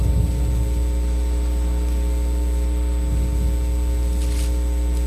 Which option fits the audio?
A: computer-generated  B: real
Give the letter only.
B